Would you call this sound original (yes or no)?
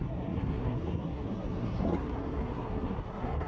no